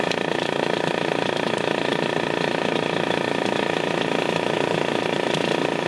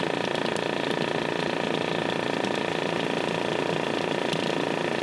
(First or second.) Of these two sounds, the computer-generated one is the first